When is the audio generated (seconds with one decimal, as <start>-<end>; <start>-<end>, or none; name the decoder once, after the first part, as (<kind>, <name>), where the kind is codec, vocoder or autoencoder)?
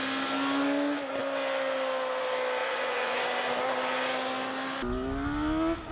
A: 2.6-3.2 (vocoder, Vocos)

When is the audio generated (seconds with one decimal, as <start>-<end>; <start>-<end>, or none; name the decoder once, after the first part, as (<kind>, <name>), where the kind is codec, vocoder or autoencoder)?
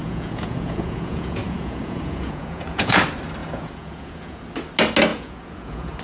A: 0.0-3.0 (vocoder, Vocos); 3.4-4.4; 5.1-6.0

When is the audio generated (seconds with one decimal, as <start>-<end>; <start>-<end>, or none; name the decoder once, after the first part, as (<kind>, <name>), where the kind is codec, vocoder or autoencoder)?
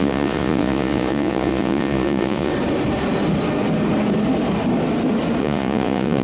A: 0.0-2.5 (vocoder, Vocos); 5.4-6.2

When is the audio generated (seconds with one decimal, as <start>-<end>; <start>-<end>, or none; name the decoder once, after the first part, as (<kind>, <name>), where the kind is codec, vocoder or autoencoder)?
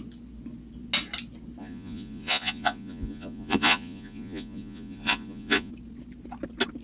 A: 1.6-5.7 (vocoder, Vocos)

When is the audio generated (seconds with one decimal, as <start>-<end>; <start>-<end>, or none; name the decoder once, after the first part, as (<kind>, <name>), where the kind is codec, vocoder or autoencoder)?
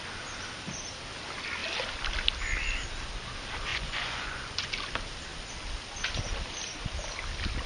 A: 3.7-4.7 (vocoder, Vocos)